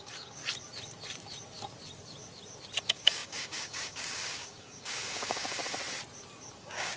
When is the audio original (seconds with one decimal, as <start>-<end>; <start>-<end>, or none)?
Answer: 0.4-2.8; 5.6-6.6